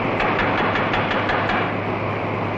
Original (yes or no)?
yes